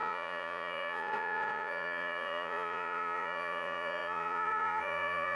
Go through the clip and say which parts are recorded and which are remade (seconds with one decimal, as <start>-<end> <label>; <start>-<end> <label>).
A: 0.0-5.4 remade